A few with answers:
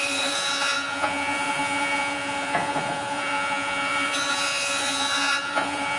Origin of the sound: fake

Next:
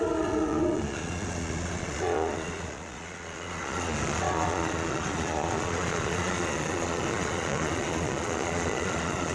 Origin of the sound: fake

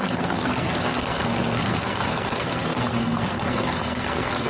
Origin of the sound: fake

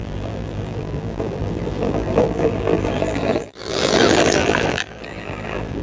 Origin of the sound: fake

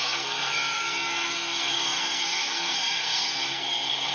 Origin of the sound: fake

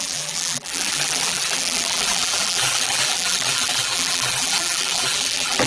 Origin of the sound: fake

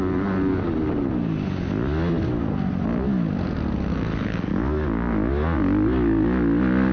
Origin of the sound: real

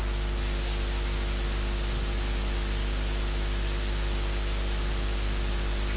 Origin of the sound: real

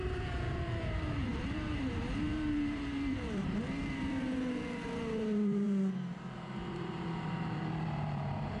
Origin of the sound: fake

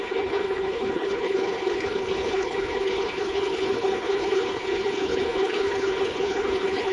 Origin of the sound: fake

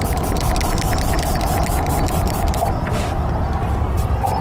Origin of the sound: fake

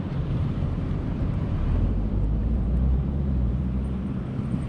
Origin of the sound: fake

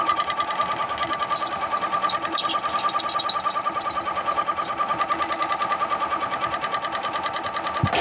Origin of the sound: real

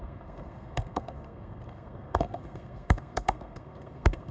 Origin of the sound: fake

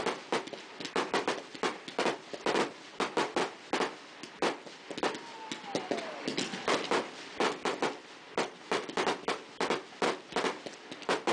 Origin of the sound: real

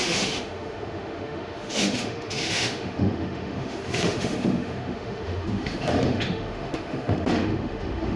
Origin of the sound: fake